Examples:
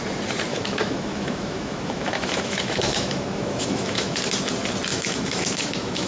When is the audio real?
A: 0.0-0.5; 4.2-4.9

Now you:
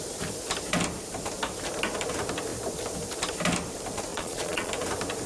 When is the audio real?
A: 0.0-4.1; 4.7-5.3

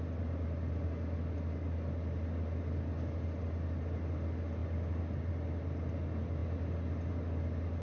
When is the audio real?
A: 0.0-7.8